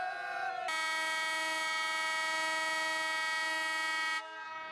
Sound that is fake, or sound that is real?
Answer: real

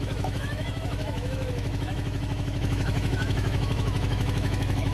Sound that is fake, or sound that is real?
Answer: fake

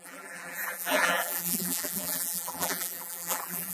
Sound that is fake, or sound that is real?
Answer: fake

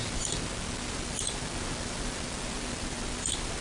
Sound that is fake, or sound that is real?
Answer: real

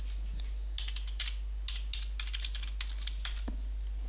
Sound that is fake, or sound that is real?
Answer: real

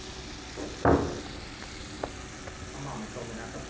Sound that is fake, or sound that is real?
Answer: real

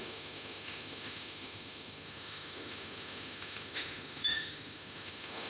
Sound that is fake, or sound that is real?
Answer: fake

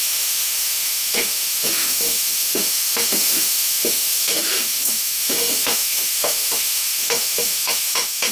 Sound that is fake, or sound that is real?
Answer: fake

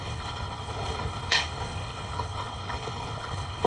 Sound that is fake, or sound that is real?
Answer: fake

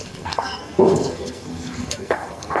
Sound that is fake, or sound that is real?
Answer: fake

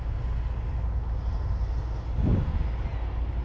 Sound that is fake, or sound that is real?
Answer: real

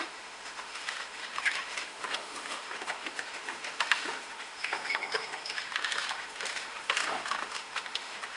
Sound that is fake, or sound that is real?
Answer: fake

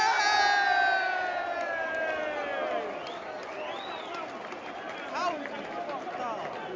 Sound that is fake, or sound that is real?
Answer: real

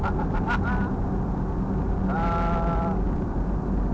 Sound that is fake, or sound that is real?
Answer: real